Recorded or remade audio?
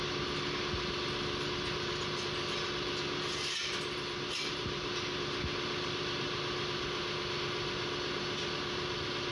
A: recorded